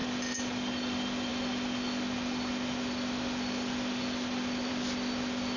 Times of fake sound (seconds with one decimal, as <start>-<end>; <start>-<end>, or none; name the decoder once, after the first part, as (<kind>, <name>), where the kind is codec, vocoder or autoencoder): none